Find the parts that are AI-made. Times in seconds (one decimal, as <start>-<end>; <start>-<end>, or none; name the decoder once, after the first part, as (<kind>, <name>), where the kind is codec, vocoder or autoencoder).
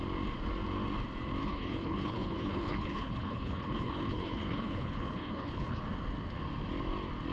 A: 1.4-5.8 (codec, HILCodec)